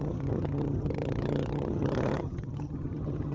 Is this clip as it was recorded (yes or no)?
no